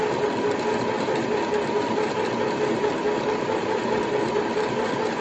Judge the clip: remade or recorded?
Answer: recorded